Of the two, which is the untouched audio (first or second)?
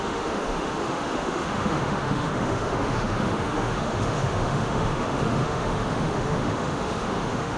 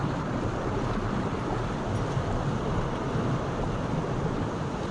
second